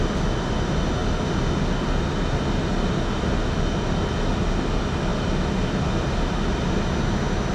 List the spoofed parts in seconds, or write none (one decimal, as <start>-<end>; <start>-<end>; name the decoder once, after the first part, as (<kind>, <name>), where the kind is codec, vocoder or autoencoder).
none